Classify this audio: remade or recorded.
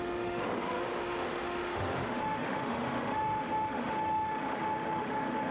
remade